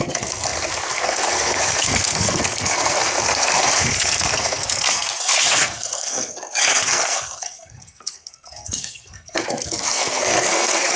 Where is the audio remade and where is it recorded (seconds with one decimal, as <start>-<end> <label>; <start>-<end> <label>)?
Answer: 0.0-11.0 remade